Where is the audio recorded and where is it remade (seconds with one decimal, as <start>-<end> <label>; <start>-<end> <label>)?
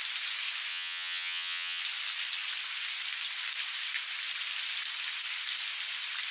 0.0-0.7 recorded; 0.7-1.8 remade; 1.8-6.3 recorded